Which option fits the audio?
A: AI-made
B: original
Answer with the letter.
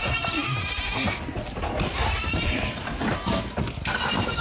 B